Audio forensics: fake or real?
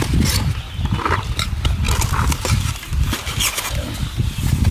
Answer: real